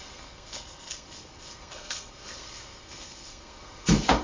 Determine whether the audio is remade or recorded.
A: remade